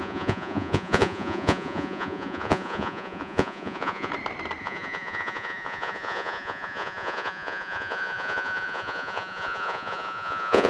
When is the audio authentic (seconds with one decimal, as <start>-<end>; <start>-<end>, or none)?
4.1-4.6